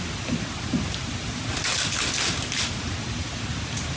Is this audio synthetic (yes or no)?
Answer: no